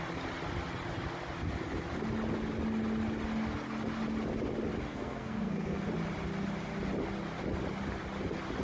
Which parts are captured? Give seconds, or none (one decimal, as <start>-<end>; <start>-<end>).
0.0-4.9; 5.9-8.6